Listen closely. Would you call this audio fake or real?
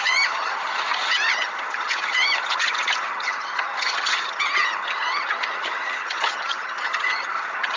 fake